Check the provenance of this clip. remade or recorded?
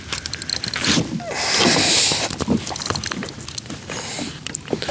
recorded